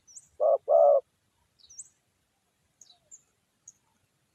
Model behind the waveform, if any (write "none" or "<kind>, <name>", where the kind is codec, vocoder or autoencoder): none